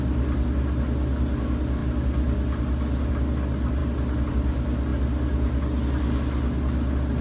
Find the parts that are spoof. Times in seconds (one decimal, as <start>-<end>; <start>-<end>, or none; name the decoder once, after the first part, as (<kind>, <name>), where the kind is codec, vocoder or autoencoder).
none